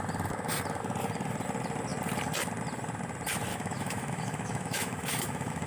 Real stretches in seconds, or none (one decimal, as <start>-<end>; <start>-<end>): 0.0-3.5